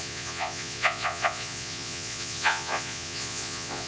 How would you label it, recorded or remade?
remade